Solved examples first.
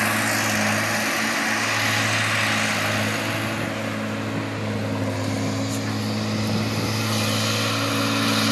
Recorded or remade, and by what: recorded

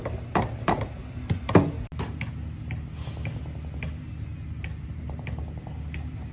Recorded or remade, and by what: recorded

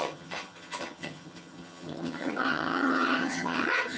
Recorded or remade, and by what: remade, vocoder, HiFi-GAN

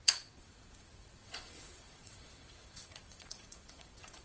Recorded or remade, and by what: remade, vocoder, WaveNeXt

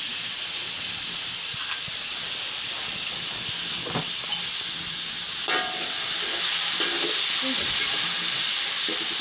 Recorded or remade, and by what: recorded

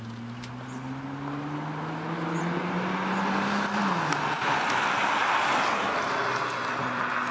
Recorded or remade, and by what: recorded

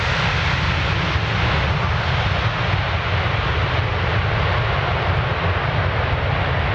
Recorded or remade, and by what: recorded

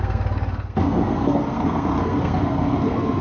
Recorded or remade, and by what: remade, codec, SNAC